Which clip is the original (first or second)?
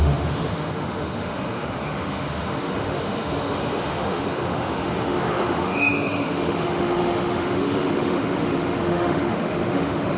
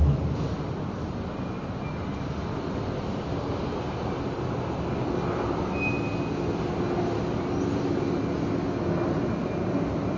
second